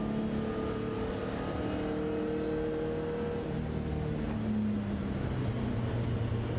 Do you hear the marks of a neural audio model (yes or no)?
no